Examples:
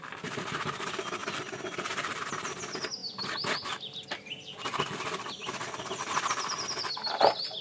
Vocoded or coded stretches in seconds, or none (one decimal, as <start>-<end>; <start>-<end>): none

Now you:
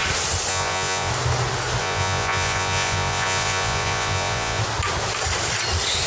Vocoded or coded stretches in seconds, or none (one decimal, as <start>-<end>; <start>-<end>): 0.5-1.1; 1.8-4.6

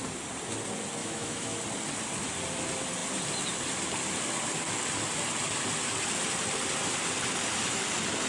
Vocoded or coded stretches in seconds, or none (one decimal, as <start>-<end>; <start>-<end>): 1.0-1.6

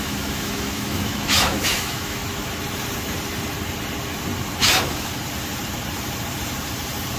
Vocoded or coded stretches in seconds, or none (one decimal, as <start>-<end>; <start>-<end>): 0.0-2.2; 4.6-5.1